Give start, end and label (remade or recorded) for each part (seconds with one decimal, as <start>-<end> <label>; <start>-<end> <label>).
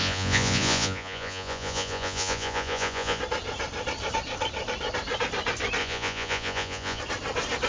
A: 0.0-3.2 remade; 3.2-5.8 recorded; 5.8-7.0 remade; 7.0-7.7 recorded